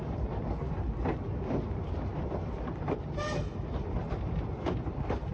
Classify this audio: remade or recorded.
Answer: recorded